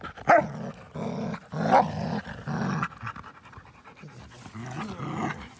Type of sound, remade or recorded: recorded